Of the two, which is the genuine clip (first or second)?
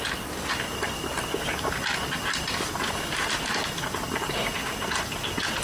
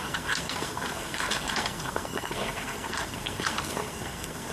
first